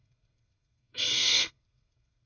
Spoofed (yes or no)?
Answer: yes